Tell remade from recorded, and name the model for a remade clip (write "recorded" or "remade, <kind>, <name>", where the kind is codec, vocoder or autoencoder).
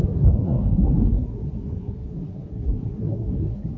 remade, codec, SNAC